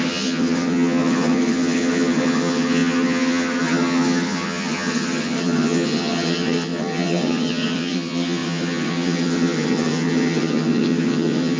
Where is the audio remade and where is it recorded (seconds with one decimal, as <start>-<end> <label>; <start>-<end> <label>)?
0.0-11.6 remade